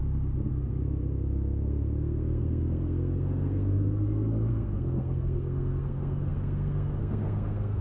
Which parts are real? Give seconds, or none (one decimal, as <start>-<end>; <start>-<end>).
0.0-0.5